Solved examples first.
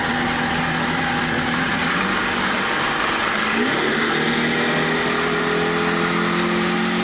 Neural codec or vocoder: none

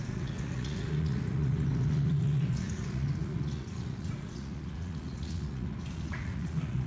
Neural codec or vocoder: vocoder, Vocos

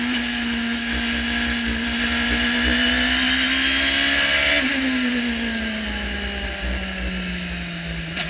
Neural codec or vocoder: none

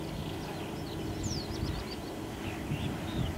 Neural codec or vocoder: none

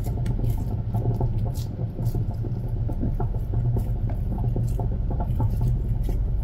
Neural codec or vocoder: vocoder, BigVGAN v2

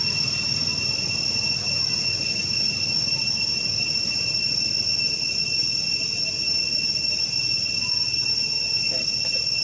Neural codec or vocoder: none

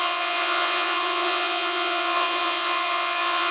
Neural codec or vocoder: vocoder, Vocos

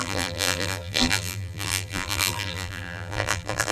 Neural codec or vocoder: vocoder, BigVGAN v2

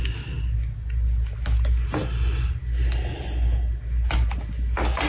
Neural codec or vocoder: none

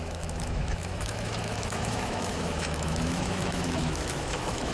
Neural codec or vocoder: autoencoder, DAC-VAE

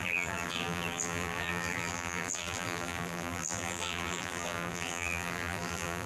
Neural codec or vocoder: vocoder, BigVGAN v2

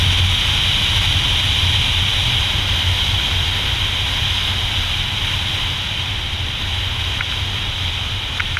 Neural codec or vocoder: none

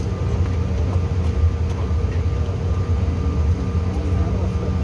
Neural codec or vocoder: none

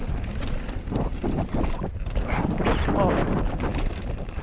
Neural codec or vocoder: none